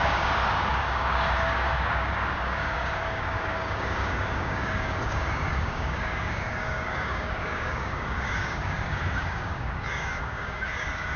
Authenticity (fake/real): fake